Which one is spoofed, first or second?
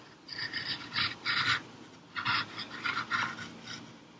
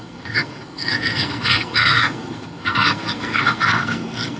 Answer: second